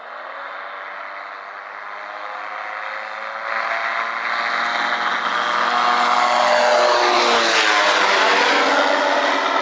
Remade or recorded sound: recorded